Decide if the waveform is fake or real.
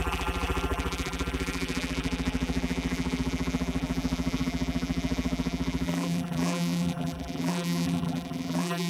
fake